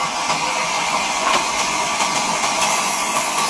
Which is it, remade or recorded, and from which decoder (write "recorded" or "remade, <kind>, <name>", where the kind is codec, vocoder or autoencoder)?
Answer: remade, vocoder, Vocos